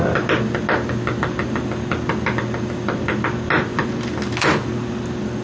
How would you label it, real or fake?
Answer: real